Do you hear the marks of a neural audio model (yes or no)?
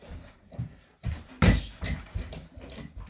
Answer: no